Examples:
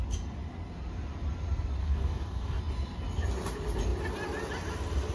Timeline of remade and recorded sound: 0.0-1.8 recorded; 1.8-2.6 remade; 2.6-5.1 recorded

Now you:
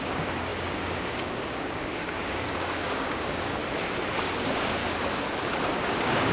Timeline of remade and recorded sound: 0.0-3.6 remade; 3.6-4.2 recorded; 4.2-4.8 remade; 4.8-5.7 recorded; 5.7-6.3 remade

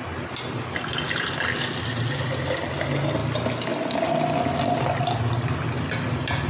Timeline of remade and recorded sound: 0.0-6.5 recorded

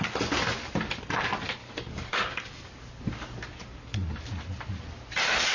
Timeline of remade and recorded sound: 0.0-1.6 recorded; 1.6-3.4 remade; 3.4-5.5 recorded

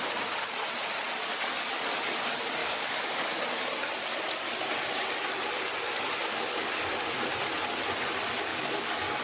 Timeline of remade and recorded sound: 0.0-2.6 recorded; 2.6-3.4 remade; 3.4-6.2 recorded; 6.2-6.9 remade; 6.9-8.5 recorded; 8.5-9.2 remade